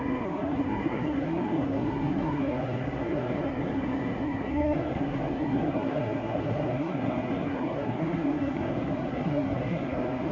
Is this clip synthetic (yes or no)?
yes